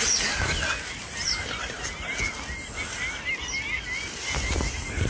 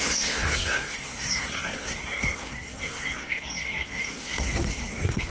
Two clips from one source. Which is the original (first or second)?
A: first